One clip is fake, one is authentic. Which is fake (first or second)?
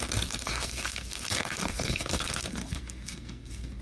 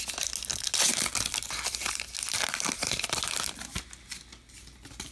first